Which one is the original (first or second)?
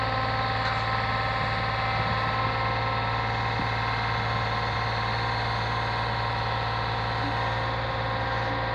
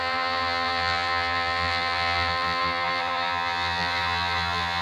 first